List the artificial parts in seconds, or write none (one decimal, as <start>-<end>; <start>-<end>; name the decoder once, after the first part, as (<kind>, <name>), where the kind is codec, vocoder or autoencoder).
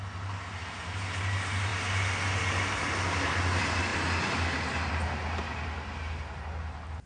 none